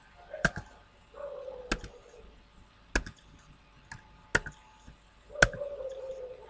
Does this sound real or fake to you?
real